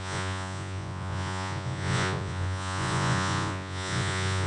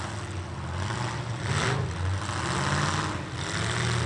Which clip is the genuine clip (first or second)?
second